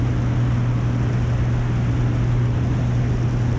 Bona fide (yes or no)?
yes